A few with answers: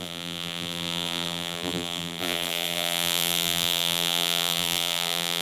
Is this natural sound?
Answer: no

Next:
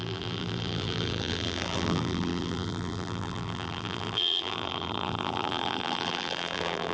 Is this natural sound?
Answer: no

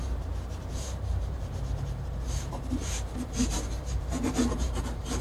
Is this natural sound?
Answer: no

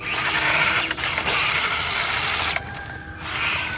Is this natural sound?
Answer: no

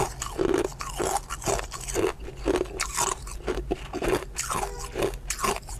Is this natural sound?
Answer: yes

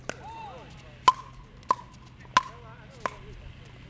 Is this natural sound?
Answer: yes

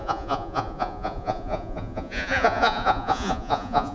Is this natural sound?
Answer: no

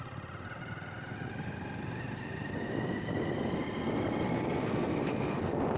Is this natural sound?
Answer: yes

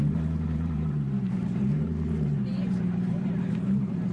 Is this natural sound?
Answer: no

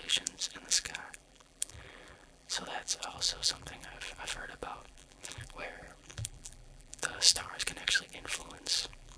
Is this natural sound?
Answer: no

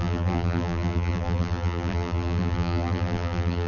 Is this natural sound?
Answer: no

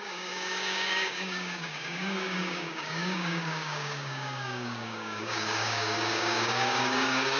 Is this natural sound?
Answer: no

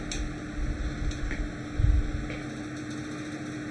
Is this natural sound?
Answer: yes